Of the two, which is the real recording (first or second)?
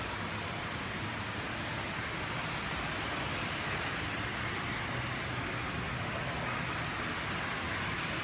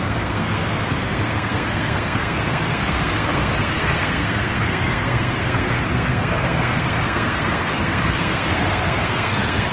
first